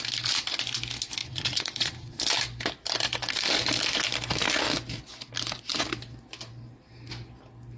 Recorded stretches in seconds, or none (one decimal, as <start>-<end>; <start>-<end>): 0.0-1.2; 2.2-7.8

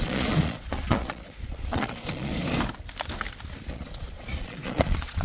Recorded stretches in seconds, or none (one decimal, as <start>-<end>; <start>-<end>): 2.3-3.7

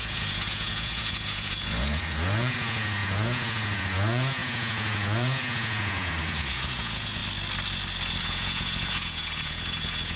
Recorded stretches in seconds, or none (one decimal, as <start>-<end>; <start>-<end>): 7.2-8.2